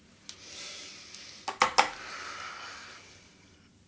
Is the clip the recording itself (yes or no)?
yes